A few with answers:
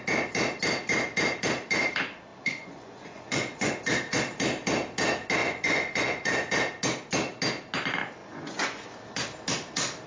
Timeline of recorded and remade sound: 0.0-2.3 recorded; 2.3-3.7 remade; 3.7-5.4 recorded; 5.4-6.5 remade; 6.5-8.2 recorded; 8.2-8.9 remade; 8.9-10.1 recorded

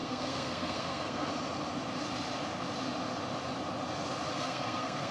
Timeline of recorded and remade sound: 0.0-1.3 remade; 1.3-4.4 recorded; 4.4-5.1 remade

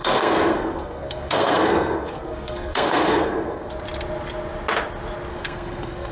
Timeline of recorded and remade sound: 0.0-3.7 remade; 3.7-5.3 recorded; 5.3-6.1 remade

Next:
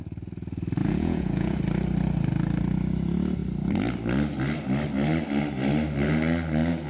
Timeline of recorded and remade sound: 0.0-0.8 recorded; 0.8-1.6 remade; 1.6-6.9 recorded

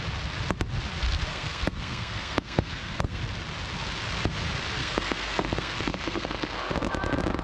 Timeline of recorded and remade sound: 0.0-1.3 recorded; 1.3-3.2 remade; 3.2-4.8 recorded; 4.8-6.9 remade; 6.9-7.4 recorded